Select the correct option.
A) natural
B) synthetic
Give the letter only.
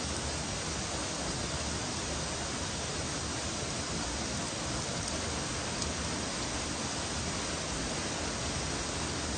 A